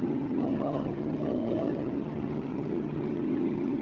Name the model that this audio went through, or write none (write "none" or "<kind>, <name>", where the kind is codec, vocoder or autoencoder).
vocoder, HiFi-GAN